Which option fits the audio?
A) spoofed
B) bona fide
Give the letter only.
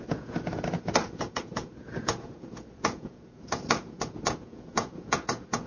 A